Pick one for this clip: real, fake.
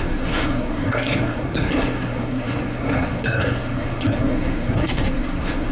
fake